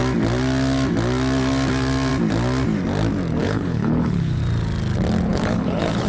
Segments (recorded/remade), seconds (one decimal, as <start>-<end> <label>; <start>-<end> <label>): 0.0-3.4 recorded; 3.4-4.4 remade; 4.4-5.3 recorded; 5.3-6.1 remade